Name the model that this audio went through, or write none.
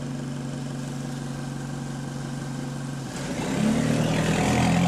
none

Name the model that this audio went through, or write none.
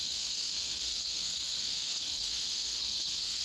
codec, SNAC